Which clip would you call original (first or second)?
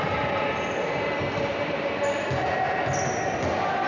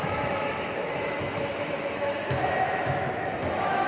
first